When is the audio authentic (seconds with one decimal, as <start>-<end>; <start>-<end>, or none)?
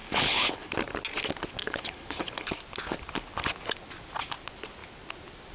0.7-1.6; 2.5-5.5